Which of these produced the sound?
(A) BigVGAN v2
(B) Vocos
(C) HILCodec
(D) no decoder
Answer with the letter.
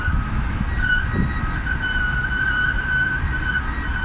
D